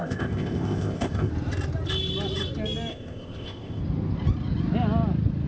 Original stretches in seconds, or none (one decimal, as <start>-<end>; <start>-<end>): 1.3-2.9; 3.8-5.5